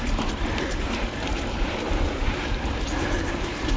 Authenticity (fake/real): fake